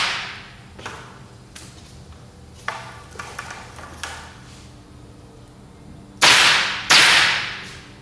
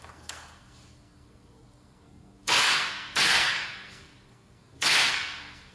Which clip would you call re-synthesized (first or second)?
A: second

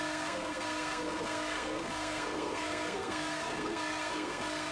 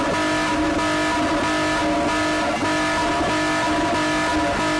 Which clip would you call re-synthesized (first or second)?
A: first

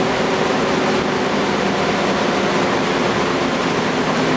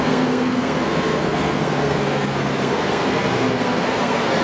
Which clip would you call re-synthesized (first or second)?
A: second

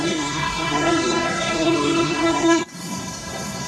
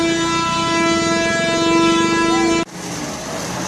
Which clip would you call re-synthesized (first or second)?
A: first